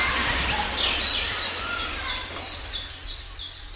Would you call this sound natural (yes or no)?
yes